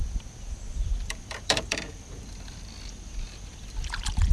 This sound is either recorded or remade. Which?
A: remade